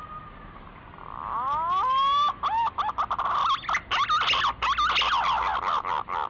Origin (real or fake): real